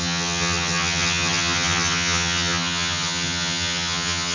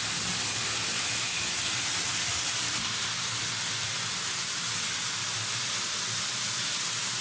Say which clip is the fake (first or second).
first